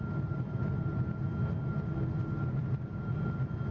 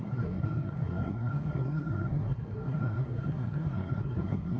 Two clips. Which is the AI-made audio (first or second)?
second